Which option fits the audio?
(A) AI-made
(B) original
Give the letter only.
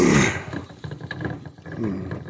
B